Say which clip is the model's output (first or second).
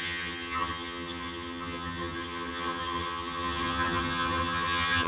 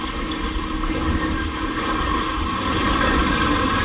first